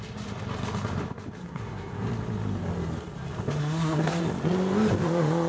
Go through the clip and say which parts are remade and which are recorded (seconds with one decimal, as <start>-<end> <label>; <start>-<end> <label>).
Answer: 0.0-1.4 recorded; 1.4-2.1 remade; 2.1-3.6 recorded; 3.6-4.2 remade; 4.2-5.5 recorded